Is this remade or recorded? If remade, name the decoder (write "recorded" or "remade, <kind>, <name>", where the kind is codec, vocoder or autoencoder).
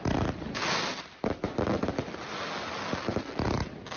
recorded